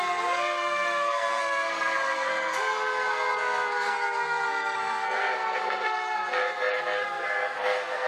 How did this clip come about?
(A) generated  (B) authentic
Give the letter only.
A